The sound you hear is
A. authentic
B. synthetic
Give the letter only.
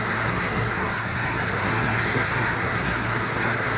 B